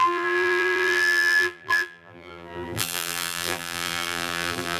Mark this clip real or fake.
fake